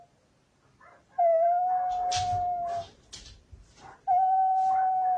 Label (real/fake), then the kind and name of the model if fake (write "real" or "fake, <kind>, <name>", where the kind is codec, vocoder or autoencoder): real